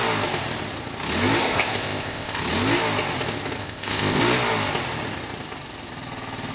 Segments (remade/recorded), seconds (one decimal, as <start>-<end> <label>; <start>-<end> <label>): 0.0-1.4 recorded; 1.4-2.4 remade; 2.4-3.6 recorded; 3.6-4.2 remade; 4.2-6.5 recorded